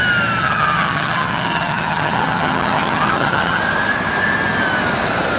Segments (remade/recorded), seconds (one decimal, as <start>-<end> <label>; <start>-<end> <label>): 0.0-0.4 recorded; 0.4-3.6 remade; 3.6-5.4 recorded